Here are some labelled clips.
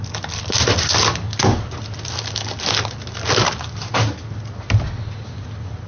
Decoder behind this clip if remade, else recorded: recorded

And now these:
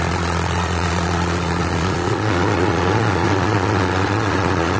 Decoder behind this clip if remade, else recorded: remade, vocoder, Vocos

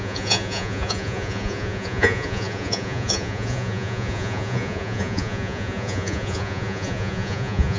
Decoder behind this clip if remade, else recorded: remade, vocoder, Vocos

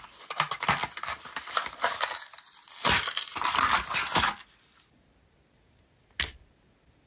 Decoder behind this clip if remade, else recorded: recorded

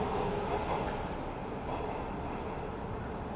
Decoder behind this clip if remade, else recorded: recorded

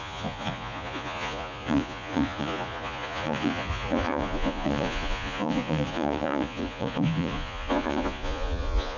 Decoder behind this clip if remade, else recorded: remade, vocoder, Vocos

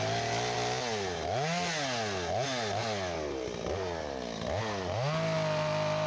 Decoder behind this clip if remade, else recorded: recorded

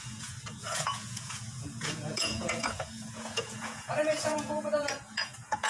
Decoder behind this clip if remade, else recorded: remade, vocoder, Vocos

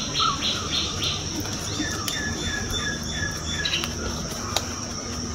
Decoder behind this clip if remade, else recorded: recorded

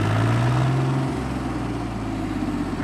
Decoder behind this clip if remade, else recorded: recorded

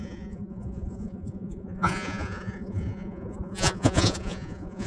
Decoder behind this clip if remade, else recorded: remade, vocoder, Vocos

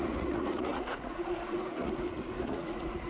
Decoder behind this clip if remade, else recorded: remade, vocoder, Vocos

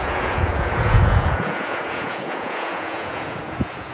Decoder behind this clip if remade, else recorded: remade, vocoder, Vocos